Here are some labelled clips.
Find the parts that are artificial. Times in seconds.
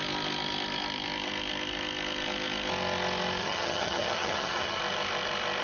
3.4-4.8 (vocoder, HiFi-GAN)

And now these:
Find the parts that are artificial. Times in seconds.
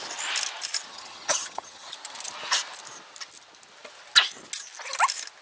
0.9-1.9 (vocoder, HiFi-GAN)